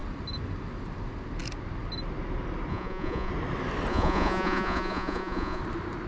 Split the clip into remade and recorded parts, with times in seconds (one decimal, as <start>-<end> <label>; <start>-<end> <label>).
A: 0.0-2.7 recorded; 2.7-3.3 remade; 3.3-3.9 recorded; 3.9-5.6 remade; 5.6-6.1 recorded